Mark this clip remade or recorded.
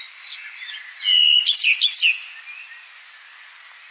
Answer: recorded